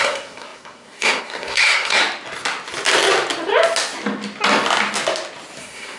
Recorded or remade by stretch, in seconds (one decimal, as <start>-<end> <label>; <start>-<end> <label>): 0.0-2.0 remade; 2.0-5.6 recorded; 5.6-6.0 remade